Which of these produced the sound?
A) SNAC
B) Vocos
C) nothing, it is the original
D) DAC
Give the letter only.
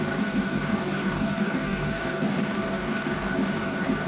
D